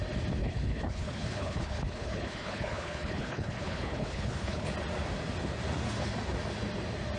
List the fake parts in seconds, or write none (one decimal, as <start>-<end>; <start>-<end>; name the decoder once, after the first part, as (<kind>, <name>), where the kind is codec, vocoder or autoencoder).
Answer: 0.4-4.7 (codec, HILCodec)